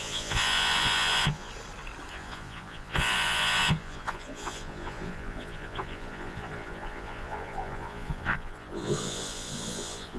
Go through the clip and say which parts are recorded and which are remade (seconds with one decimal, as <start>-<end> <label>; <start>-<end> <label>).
0.0-1.5 remade; 1.5-2.1 recorded; 2.1-10.2 remade